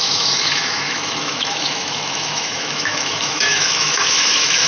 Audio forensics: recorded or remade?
remade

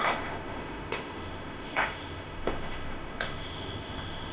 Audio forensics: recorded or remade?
remade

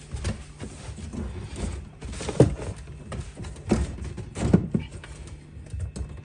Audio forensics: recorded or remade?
recorded